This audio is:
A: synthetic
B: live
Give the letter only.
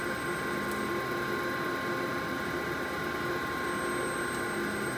B